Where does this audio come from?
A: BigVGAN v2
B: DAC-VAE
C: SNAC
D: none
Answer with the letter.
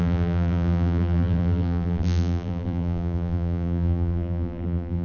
A